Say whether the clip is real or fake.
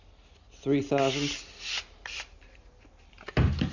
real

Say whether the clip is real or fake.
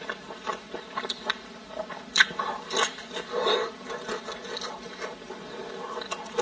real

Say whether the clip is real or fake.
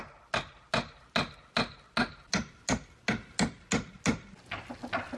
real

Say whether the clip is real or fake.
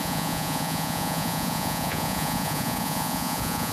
fake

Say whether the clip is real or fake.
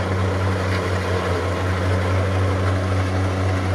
real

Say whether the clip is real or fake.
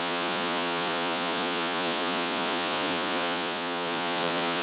fake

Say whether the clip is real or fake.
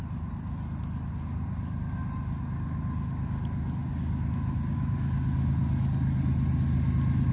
real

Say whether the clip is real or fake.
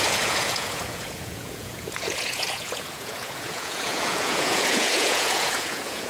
fake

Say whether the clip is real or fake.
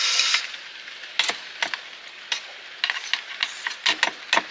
real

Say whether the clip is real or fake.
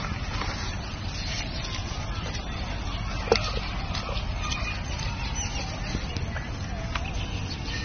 real